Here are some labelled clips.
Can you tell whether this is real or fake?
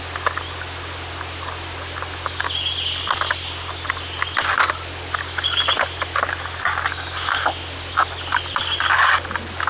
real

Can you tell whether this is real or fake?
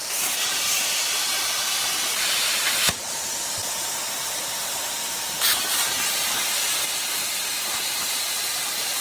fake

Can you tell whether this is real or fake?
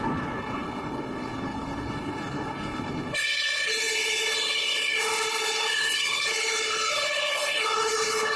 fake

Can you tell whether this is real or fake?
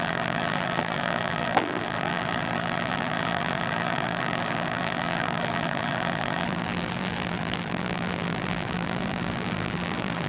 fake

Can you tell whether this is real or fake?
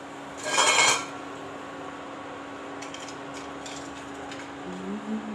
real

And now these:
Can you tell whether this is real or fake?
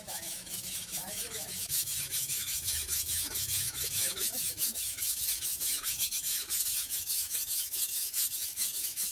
fake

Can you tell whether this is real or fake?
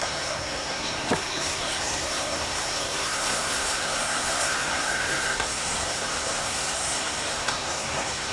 fake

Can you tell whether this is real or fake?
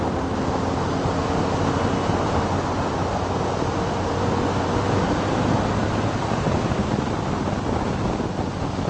real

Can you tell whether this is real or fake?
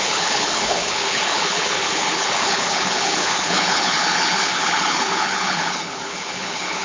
fake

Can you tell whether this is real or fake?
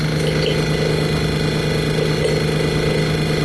real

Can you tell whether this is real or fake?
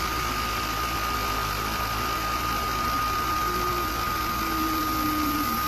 real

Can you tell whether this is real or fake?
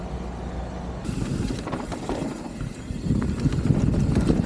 real